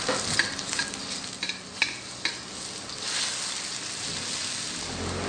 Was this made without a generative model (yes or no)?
yes